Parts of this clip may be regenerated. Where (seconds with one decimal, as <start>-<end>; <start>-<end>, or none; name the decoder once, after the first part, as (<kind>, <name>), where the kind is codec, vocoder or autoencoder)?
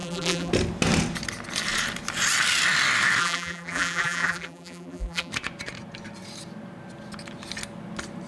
0.0-0.5 (vocoder, BigVGAN v2); 3.2-5.3